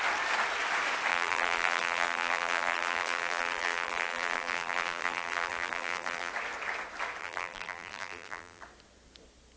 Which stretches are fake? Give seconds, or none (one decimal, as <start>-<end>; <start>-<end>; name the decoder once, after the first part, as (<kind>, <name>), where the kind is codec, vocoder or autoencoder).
1.1-6.3 (vocoder, BigVGAN v2); 7.2-8.6